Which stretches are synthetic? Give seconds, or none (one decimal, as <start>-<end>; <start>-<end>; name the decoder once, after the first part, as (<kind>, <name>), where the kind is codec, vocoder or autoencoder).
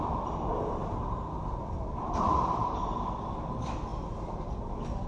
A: 0.0-0.8 (vocoder, BigVGAN v2); 1.5-5.1